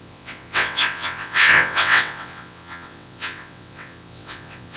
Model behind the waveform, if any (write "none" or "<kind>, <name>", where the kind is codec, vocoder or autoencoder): vocoder, WaveNeXt